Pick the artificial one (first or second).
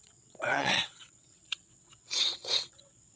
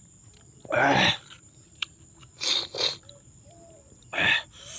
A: first